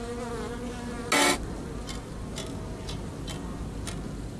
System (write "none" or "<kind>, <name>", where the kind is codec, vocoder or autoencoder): none